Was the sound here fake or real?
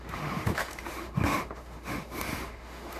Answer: fake